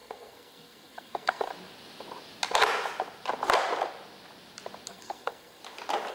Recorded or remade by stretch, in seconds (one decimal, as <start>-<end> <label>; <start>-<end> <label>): 0.0-1.5 remade; 1.5-4.9 recorded; 4.9-5.6 remade; 5.6-6.1 recorded